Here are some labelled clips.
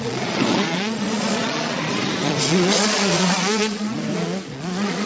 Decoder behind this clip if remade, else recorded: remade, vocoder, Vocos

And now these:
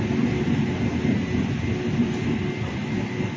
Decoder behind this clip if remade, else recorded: recorded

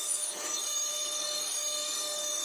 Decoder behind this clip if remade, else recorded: remade, codec, DAC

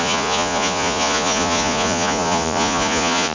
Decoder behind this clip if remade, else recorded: remade, vocoder, Vocos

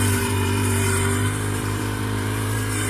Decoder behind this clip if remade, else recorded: remade, vocoder, BigVGAN v2